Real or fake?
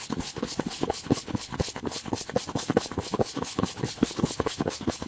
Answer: fake